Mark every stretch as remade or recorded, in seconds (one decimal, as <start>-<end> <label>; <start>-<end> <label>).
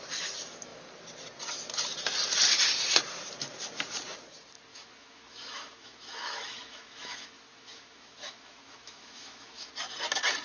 0.0-4.7 recorded; 4.7-9.7 remade; 9.7-10.4 recorded